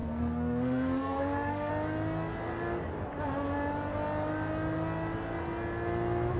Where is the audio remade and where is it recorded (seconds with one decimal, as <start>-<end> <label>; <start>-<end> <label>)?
0.0-1.7 remade; 1.7-6.4 recorded